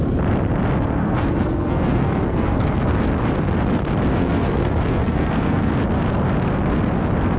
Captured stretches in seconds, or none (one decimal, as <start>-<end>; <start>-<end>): 0.0-1.0; 3.0-4.2; 5.7-7.4